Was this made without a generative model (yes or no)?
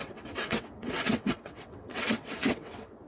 no